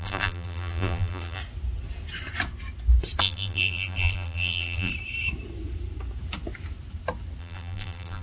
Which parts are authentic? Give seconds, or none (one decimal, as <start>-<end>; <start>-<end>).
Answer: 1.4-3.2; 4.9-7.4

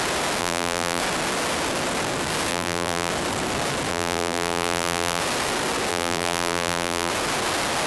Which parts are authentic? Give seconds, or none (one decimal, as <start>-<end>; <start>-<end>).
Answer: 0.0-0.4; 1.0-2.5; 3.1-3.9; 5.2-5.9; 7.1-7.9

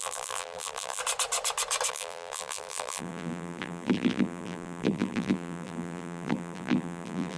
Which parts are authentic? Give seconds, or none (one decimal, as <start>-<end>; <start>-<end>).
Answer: 1.0-1.9

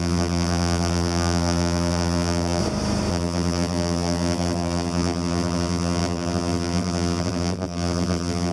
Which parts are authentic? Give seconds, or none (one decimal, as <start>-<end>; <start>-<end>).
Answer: 2.6-3.1